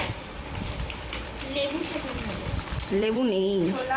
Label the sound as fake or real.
fake